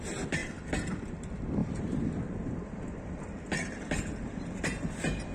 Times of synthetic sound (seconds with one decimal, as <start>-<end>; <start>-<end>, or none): 1.6-2.5